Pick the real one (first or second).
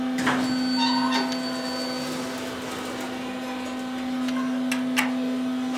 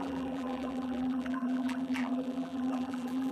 first